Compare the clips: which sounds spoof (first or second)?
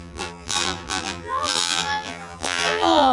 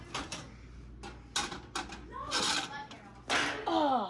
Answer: first